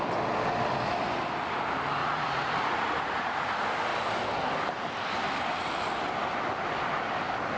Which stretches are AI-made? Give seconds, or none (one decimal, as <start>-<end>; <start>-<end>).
2.0-3.5